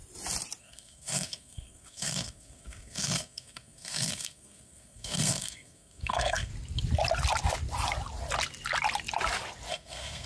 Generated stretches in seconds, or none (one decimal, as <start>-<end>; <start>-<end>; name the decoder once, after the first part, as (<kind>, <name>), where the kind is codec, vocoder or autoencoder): 0.6-6.5 (codec, SNAC); 9.7-10.3